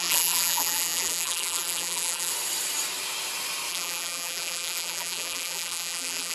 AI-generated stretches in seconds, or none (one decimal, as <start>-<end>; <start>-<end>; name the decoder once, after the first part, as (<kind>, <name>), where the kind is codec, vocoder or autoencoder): 0.0-2.3 (vocoder, BigVGAN v2); 3.7-6.3

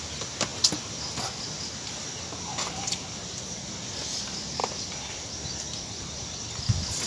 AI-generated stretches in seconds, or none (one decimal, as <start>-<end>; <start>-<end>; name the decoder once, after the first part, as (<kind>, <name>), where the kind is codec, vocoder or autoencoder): none